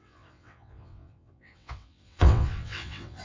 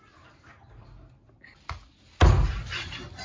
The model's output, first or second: first